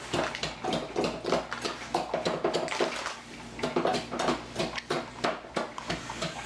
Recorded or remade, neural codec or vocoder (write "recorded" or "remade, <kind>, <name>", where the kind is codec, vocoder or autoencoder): recorded